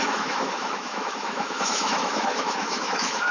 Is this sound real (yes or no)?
no